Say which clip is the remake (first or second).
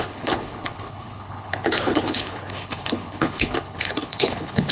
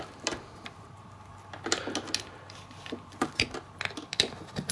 first